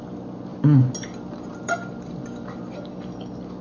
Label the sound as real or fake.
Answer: real